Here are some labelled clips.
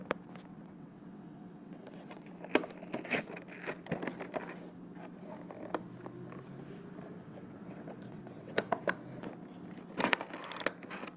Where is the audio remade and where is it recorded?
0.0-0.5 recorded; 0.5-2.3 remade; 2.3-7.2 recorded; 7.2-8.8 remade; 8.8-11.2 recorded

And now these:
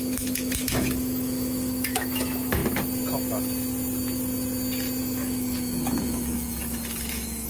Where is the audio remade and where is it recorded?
0.0-2.6 remade; 2.6-5.0 recorded; 5.0-7.5 remade

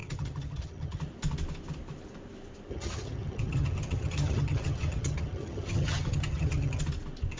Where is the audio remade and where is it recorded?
0.0-1.0 remade; 1.0-2.7 recorded; 2.7-6.8 remade; 6.8-7.4 recorded